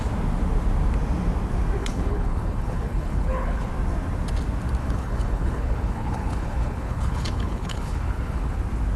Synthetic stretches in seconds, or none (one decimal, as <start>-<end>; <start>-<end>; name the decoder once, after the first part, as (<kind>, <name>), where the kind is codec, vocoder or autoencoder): 1.8-3.7 (codec, HILCodec); 4.8-8.6